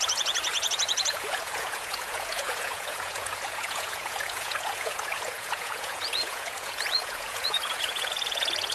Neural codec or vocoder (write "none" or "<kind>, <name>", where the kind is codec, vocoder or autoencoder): vocoder, Vocos